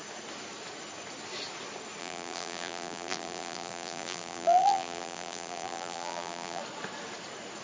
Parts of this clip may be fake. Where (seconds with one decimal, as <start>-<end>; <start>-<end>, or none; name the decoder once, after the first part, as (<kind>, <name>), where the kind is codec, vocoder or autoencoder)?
2.0-6.6 (vocoder, BigVGAN v2)